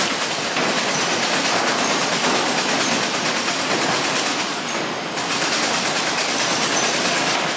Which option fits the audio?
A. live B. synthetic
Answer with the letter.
A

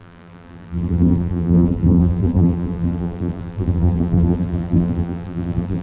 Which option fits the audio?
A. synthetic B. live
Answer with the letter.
A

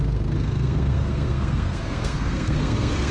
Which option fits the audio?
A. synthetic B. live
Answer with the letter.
A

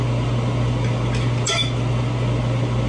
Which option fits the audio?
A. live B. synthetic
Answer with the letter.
A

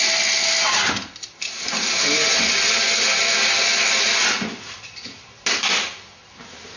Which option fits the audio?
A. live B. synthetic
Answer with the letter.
A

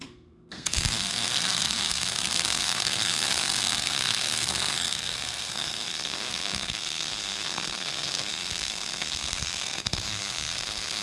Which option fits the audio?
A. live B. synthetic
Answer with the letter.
B